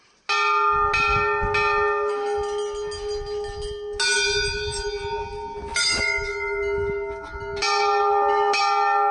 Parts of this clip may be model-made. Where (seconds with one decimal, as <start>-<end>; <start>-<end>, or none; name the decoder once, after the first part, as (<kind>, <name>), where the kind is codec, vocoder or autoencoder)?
none